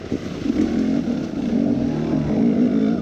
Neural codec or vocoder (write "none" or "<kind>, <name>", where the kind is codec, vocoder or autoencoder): none